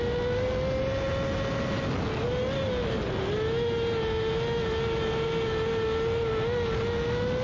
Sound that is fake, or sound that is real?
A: real